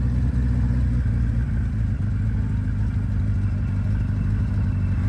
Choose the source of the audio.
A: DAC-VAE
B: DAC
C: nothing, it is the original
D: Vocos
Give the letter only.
C